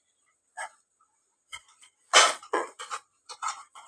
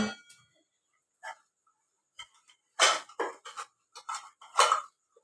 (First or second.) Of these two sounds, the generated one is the first